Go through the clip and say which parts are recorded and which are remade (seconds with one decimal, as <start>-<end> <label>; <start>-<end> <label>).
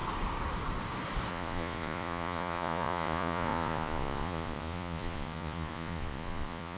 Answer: 0.0-1.3 recorded; 1.3-6.8 remade